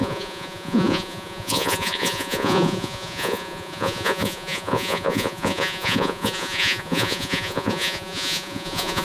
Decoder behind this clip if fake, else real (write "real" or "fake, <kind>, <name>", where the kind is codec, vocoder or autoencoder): fake, vocoder, Vocos